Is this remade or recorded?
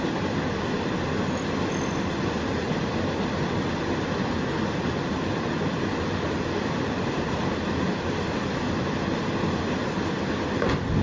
recorded